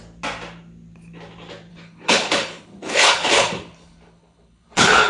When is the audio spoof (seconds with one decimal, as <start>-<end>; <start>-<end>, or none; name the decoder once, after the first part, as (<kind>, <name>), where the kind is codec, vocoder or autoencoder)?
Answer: 1.7-5.1 (codec, HILCodec)